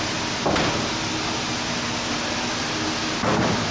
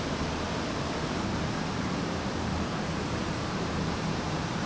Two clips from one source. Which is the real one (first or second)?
first